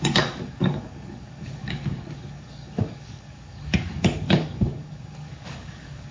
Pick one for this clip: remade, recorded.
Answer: remade